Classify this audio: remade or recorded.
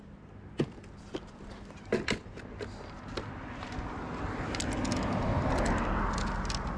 recorded